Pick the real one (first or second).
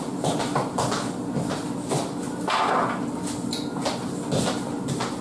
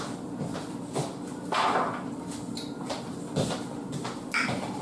first